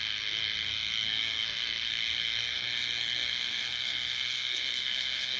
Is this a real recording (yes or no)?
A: no